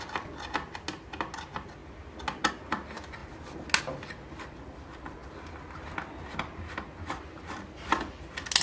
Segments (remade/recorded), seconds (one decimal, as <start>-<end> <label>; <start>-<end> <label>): 0.0-8.6 recorded